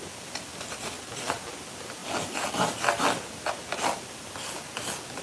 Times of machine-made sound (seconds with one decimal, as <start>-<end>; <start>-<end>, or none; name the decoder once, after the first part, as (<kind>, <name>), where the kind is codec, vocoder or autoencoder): none